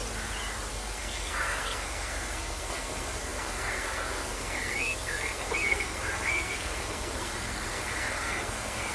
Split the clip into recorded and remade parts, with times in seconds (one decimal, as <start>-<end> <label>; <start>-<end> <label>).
0.0-0.7 recorded; 0.7-8.9 remade